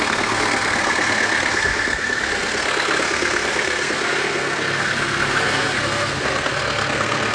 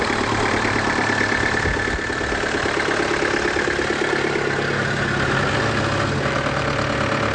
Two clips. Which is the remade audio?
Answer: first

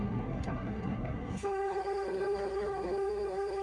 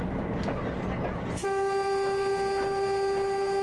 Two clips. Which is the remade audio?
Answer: first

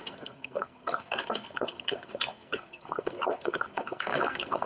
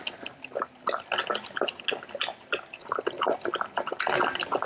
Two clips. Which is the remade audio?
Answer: first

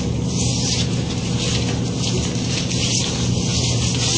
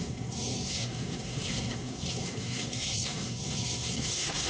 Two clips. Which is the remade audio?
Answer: second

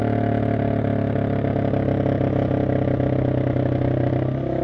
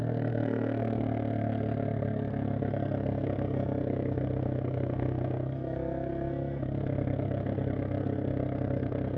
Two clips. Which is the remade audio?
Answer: second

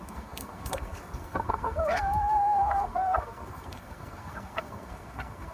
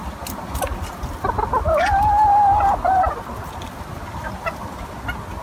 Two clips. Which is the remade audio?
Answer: first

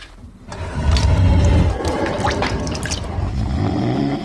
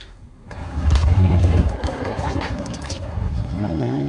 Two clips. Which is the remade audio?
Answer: second